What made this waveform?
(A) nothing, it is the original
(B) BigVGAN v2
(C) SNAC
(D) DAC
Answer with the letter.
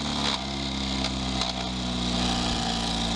A